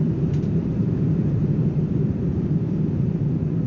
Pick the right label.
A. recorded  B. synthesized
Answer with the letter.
B